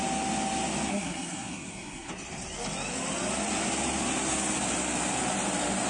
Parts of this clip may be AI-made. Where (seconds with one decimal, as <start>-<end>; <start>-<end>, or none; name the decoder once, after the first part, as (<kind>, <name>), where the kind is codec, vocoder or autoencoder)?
0.9-2.1 (codec, SNAC)